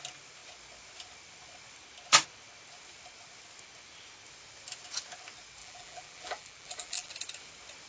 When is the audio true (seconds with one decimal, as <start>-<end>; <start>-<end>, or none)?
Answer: 0.0-5.6; 7.1-7.9